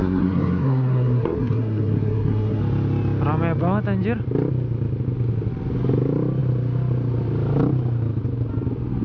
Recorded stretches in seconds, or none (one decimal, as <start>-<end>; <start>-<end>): 2.6-9.0